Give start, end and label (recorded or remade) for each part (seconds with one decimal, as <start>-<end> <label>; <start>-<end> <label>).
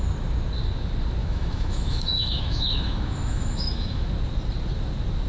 0.0-1.2 recorded; 1.2-4.1 remade; 4.1-5.3 recorded